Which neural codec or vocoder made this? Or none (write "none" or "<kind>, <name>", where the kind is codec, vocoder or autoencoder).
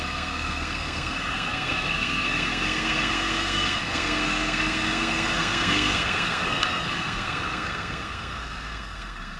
codec, SNAC